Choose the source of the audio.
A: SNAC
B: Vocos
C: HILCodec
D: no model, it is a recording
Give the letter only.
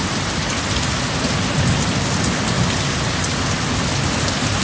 D